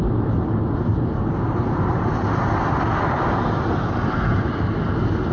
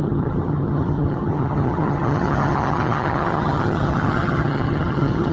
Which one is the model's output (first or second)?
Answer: second